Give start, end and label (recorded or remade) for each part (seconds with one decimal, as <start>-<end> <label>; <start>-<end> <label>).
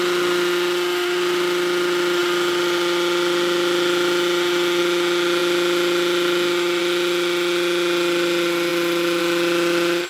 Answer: 0.0-10.1 recorded